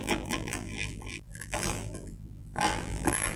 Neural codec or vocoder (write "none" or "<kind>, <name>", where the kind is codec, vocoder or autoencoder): vocoder, BigVGAN v2